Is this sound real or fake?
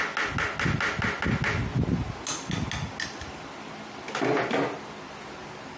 real